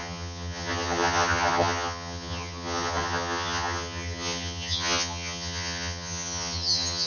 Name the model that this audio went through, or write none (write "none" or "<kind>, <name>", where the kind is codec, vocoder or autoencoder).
vocoder, HiFi-GAN